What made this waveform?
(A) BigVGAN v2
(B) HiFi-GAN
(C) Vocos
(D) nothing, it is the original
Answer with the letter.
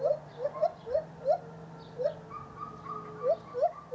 D